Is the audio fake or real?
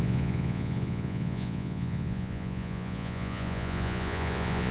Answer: fake